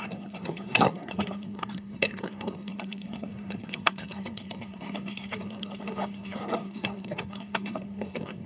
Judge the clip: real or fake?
fake